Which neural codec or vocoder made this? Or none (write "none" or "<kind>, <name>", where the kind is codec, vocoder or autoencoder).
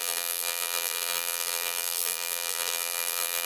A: vocoder, BigVGAN v2